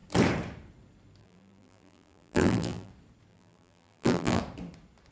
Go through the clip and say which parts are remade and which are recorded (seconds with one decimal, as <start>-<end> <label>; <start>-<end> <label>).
0.0-1.2 recorded; 1.2-2.9 remade; 2.9-3.3 recorded; 3.3-4.4 remade; 4.4-5.1 recorded